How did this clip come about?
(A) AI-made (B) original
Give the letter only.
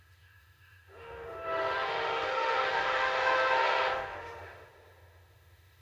A